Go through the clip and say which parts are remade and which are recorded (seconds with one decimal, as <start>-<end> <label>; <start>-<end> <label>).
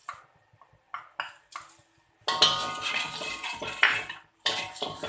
0.0-2.9 recorded; 2.9-5.1 remade